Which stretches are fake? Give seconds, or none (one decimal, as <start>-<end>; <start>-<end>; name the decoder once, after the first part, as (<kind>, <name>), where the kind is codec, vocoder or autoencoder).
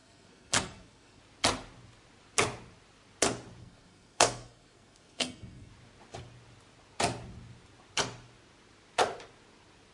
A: 0.0-1.2 (codec, SNAC); 3.6-5.7